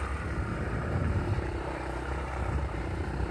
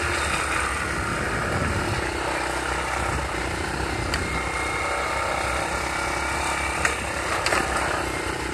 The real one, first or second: second